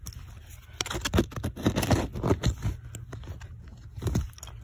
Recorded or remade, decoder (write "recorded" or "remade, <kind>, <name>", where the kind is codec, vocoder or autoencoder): recorded